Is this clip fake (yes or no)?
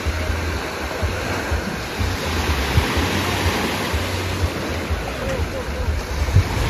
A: no